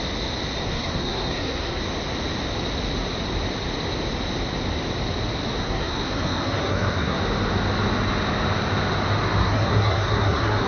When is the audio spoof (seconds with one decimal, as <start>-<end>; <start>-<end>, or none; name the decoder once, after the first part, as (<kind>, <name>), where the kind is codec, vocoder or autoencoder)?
0.6-1.8 (codec, SNAC); 5.6-7.2; 9.4-10.7